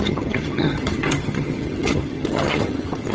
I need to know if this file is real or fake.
fake